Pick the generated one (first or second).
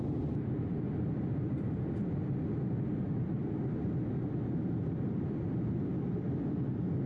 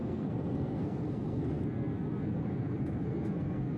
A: second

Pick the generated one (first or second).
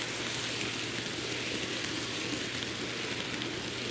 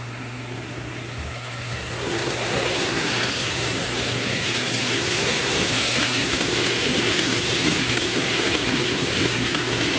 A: second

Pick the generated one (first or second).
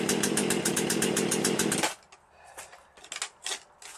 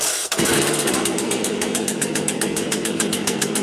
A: second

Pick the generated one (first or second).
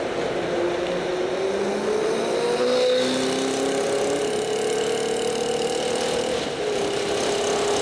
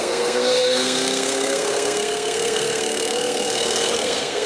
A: second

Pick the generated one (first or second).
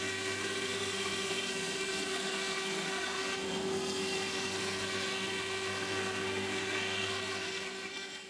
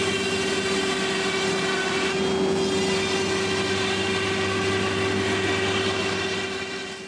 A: first